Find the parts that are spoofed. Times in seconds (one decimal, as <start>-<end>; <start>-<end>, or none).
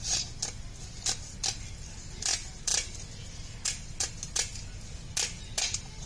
none